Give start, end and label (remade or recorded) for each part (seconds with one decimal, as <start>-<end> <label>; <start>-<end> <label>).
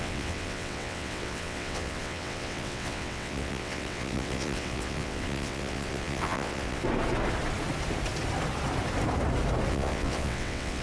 0.0-6.8 remade; 6.8-9.7 recorded; 9.7-10.8 remade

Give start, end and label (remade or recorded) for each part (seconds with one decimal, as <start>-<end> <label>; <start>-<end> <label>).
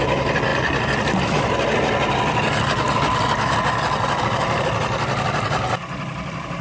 0.0-6.6 recorded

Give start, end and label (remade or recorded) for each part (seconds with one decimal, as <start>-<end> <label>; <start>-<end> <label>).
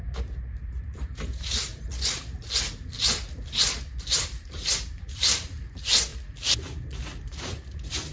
0.0-1.7 remade; 1.7-4.2 recorded; 4.2-6.1 remade; 6.1-7.2 recorded; 7.2-8.1 remade